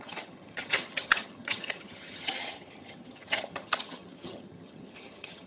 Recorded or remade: remade